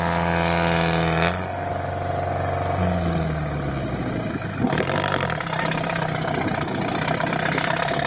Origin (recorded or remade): recorded